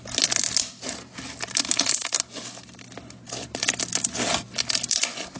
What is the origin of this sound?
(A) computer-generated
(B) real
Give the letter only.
B